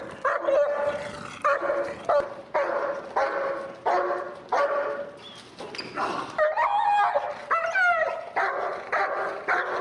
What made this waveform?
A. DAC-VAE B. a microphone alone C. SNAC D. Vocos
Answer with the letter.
B